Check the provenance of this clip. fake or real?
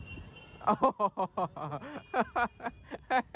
real